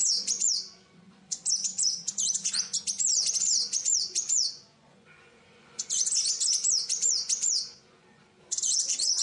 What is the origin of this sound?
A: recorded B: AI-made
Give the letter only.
B